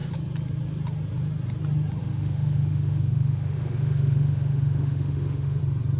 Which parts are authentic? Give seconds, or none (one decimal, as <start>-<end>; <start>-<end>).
0.0-2.0; 5.6-6.0